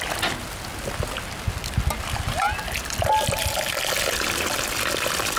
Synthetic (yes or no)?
no